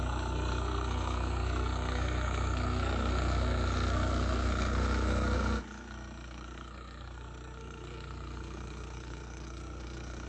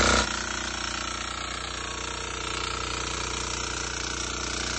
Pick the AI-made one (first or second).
first